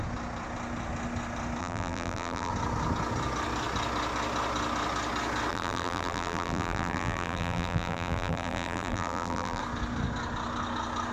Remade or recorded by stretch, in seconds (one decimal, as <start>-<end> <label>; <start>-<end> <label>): 0.0-1.6 recorded; 1.6-2.5 remade; 2.5-5.5 recorded; 5.5-9.6 remade; 9.6-11.1 recorded